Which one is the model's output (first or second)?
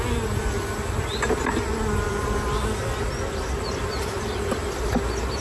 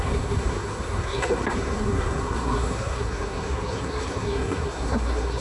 second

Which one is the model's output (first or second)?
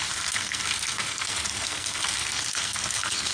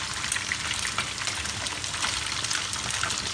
first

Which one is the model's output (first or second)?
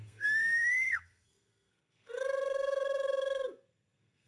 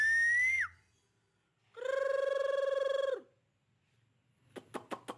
first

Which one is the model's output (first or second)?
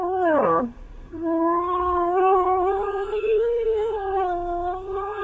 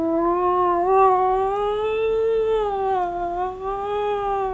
first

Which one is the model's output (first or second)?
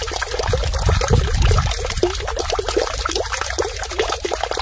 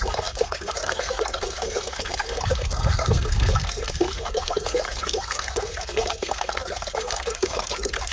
second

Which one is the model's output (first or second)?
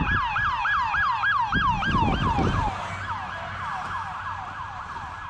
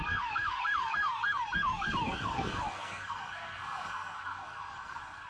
second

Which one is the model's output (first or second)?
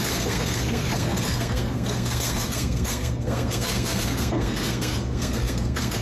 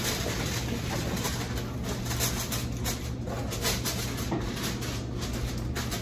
first